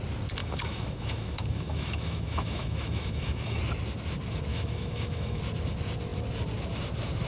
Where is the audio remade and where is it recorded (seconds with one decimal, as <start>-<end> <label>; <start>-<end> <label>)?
0.0-0.4 recorded; 0.4-3.6 remade; 3.6-4.5 recorded; 4.5-5.4 remade; 5.4-7.3 recorded